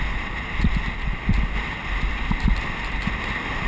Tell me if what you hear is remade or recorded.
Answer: recorded